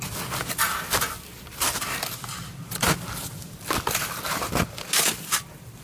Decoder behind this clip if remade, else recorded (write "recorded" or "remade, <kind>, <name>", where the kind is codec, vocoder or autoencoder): recorded